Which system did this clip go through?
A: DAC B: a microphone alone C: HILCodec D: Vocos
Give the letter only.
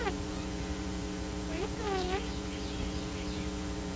D